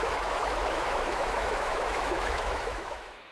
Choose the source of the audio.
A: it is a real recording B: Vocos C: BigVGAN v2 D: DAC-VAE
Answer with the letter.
D